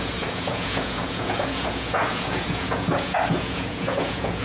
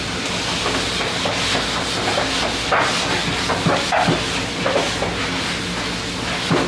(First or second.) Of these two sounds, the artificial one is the first